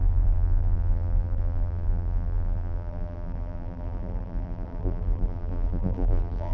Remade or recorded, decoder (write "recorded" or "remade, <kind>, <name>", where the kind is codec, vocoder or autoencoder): remade, vocoder, BigVGAN v2